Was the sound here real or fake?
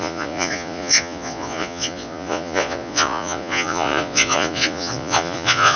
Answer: fake